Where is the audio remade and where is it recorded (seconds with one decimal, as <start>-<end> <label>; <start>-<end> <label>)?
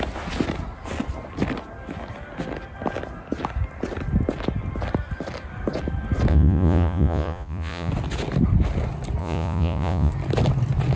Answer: 0.0-6.3 recorded; 6.3-7.9 remade; 7.9-9.2 recorded; 9.2-10.1 remade; 10.1-11.0 recorded